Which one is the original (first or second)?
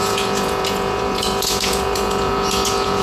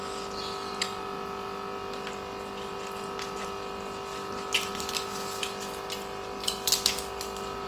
second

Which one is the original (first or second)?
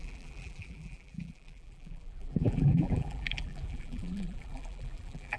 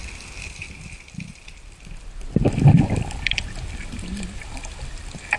second